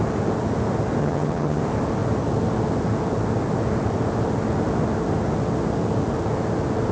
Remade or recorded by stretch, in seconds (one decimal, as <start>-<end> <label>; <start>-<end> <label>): 0.0-1.0 recorded; 1.0-1.6 remade; 1.6-6.9 recorded